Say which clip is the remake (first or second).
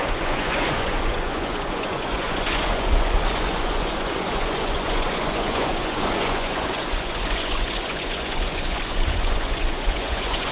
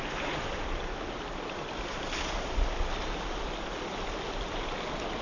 first